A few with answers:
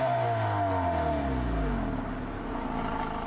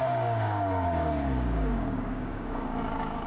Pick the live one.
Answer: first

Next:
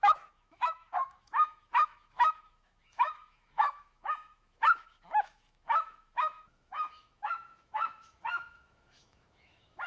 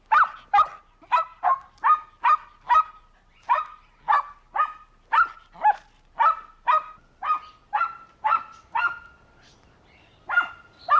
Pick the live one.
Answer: second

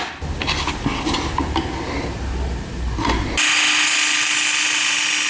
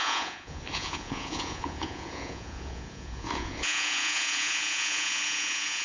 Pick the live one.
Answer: first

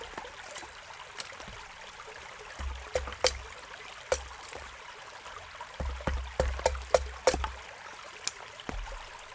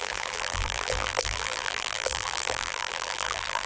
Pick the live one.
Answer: first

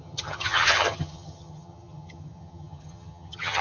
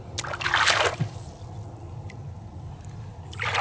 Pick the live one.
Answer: second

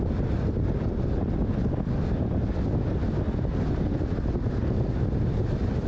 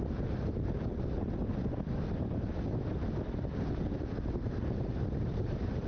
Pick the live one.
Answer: first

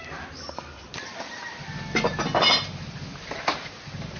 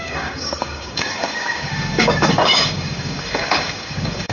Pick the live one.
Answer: first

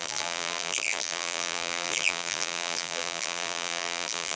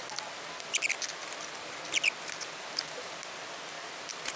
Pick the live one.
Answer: second